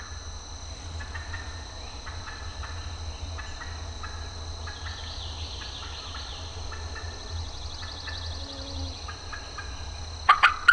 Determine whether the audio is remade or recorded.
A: recorded